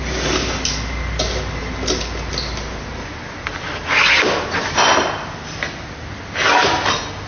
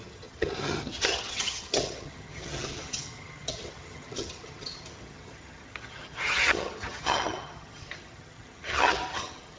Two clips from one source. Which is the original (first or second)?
first